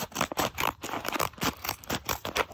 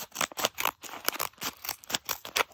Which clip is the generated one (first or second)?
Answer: first